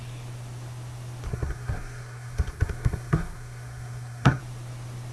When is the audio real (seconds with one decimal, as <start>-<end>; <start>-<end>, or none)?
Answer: 0.0-1.3; 4.4-5.1